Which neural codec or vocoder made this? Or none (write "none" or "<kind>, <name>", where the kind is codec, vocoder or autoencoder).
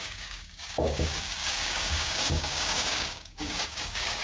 codec, DAC